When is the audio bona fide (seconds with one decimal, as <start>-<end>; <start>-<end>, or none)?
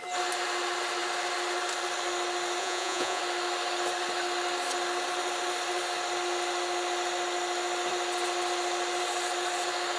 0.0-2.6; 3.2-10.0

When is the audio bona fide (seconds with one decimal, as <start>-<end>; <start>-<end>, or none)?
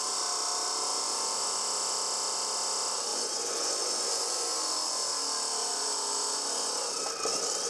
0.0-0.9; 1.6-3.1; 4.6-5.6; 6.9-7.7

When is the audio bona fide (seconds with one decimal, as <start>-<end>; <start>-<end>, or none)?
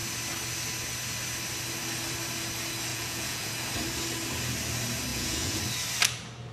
0.0-2.9; 3.5-5.1; 5.6-6.5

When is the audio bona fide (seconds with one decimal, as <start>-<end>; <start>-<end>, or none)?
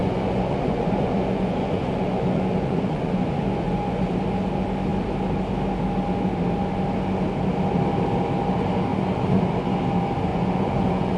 4.1-8.9; 9.8-10.3